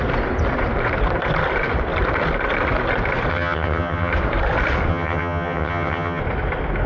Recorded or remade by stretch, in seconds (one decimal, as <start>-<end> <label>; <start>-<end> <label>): 0.0-3.3 recorded; 3.3-4.1 remade; 4.1-4.9 recorded; 4.9-6.2 remade; 6.2-6.9 recorded